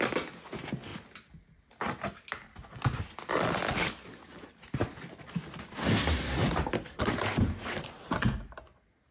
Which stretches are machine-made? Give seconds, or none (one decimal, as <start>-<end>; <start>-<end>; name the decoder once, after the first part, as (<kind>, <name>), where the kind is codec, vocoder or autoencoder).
none